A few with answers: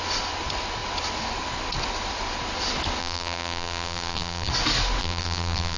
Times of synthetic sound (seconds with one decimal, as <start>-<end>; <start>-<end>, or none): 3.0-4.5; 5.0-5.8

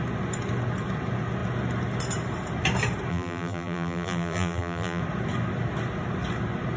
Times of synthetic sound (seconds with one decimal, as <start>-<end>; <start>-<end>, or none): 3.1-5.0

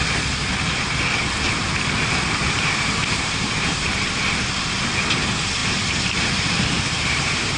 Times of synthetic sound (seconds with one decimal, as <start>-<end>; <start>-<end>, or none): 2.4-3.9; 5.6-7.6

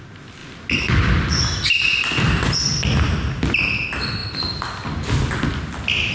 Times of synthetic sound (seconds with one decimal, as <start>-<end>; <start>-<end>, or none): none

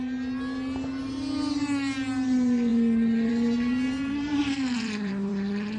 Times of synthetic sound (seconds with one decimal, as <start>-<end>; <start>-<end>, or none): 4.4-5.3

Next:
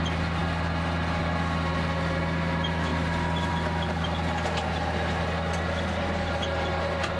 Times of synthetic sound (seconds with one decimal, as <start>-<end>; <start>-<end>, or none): none

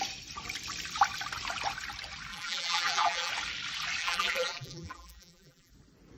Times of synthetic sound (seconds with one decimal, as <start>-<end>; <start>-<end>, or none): 2.3-3.3; 4.0-5.7

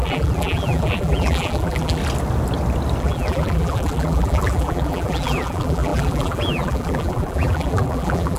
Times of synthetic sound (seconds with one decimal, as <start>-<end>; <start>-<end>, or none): 0.0-2.0; 3.0-8.4